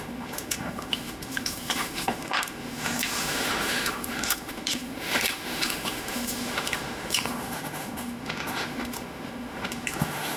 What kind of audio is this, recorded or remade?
remade